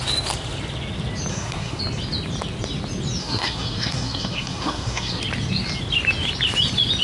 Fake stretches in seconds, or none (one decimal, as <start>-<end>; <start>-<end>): 1.3-1.8; 3.2-5.2